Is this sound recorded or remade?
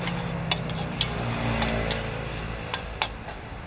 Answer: recorded